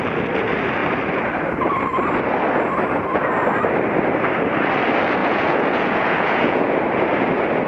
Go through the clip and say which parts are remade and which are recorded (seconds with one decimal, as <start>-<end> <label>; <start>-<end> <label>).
0.0-5.2 recorded; 5.2-6.8 remade; 6.8-7.7 recorded